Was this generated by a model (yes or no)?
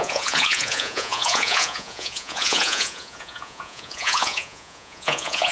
yes